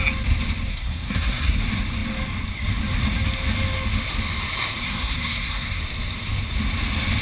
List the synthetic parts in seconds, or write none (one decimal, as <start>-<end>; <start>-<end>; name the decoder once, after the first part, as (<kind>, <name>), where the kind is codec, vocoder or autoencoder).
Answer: 0.7-1.6 (codec, SNAC); 4.8-5.8

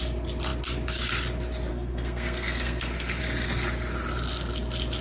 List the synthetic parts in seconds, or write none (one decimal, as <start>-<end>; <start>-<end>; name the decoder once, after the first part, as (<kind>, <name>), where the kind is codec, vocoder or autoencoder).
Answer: 1.7-3.2 (codec, SNAC)

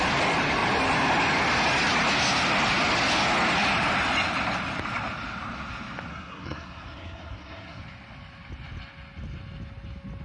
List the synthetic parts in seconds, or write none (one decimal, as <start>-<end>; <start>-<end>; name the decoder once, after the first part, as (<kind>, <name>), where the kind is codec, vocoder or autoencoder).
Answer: 6.1-7.8 (codec, SNAC)

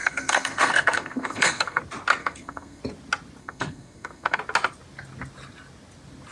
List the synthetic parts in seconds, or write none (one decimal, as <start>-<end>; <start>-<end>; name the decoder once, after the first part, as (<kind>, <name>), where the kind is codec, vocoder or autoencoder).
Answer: 0.0-1.8 (codec, SNAC); 2.2-2.8; 3.4-4.4

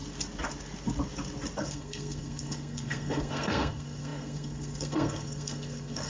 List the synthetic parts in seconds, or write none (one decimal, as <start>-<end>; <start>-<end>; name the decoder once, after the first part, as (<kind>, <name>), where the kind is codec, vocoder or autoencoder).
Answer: 1.6-6.1 (codec, SNAC)

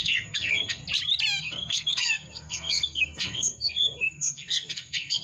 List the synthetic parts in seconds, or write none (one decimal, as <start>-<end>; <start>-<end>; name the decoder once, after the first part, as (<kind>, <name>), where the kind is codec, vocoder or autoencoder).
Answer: 0.0-0.8 (codec, SNAC); 1.4-5.2